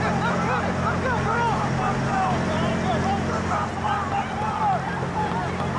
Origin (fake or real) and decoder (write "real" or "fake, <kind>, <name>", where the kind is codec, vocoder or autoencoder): real